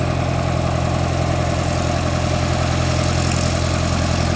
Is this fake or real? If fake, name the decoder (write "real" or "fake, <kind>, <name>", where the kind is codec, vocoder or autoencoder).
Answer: real